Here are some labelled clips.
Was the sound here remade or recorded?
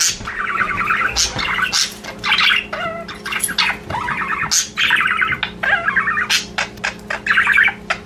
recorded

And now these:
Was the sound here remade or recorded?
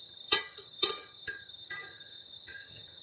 remade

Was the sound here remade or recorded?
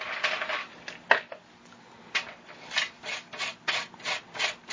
recorded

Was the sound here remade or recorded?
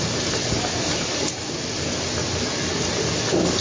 recorded